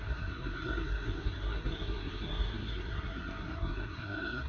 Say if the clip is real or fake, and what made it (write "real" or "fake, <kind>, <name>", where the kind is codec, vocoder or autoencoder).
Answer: fake, codec, SNAC